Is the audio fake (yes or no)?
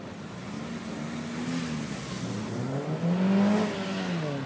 no